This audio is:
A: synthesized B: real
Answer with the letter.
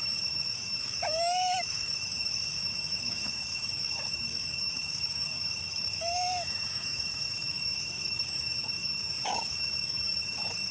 A